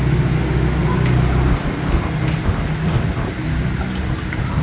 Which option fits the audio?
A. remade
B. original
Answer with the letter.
B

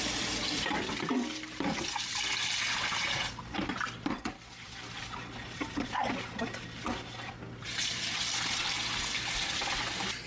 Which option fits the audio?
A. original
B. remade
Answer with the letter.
A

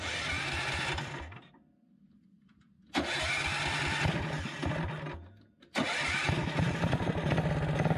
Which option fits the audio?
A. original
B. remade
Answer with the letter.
A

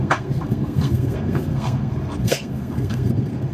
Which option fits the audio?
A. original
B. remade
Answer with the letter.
B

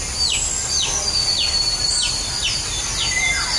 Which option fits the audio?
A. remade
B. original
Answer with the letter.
B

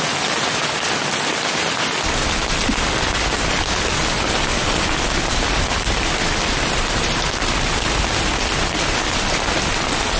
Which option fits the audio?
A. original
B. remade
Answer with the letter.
A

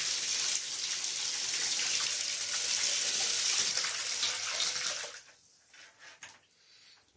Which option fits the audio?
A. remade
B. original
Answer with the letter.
B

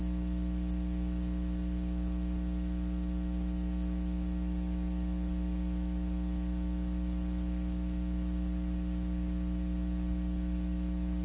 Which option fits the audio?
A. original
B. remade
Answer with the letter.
A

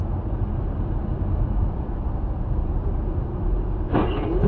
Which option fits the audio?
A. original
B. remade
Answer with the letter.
A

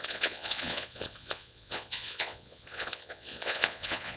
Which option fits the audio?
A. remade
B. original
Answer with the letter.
A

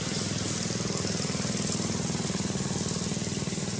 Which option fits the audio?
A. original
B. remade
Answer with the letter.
A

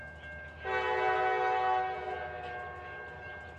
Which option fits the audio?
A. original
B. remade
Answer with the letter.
A